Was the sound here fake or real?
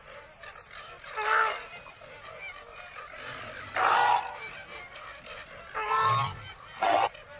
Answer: real